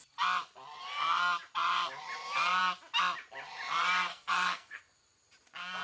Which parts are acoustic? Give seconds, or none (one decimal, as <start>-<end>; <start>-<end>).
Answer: 0.0-4.1; 4.8-5.8